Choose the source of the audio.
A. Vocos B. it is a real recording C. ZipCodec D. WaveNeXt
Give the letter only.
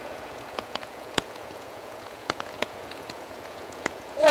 A